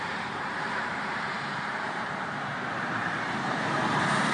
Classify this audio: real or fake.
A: fake